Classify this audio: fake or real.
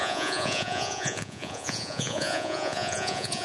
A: fake